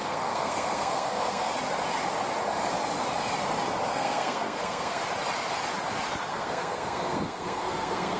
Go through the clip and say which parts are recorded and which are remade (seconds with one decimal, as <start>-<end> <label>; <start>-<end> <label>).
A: 0.0-1.5 remade; 1.5-3.9 recorded; 3.9-5.0 remade; 5.0-6.3 recorded; 6.3-8.2 remade